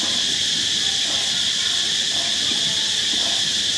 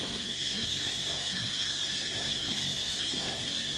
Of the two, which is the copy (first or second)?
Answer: second